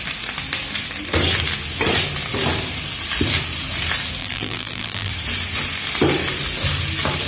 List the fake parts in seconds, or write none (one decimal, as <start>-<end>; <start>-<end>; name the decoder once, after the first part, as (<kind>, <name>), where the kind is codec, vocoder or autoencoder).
4.2-5.1 (vocoder, BigVGAN v2)